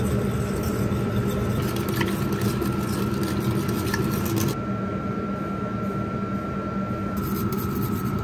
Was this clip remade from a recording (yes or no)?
no